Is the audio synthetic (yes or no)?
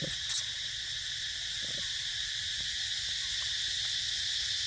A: no